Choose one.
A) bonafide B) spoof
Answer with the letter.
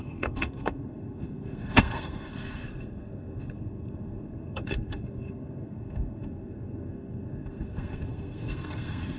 B